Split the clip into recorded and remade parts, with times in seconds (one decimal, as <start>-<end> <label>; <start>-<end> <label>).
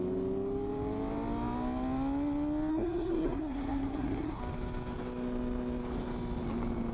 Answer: 0.0-2.7 recorded; 2.7-4.4 remade; 4.4-6.9 recorded